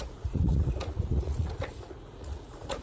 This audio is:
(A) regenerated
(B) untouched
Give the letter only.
A